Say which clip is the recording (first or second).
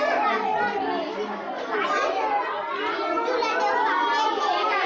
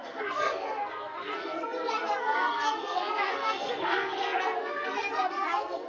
first